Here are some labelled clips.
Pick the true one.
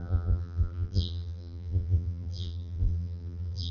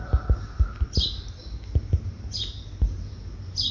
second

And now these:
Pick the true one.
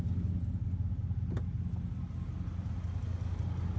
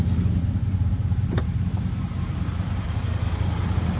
first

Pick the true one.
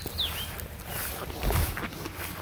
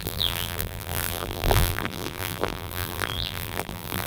first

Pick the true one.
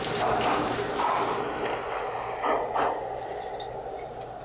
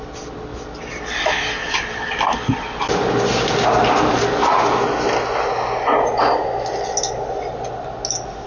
second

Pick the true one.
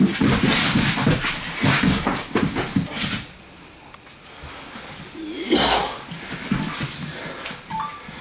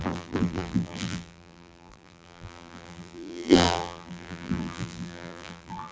first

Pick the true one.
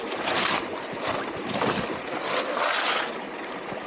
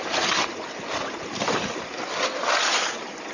first